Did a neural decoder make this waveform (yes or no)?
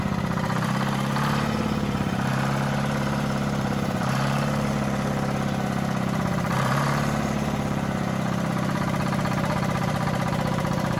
yes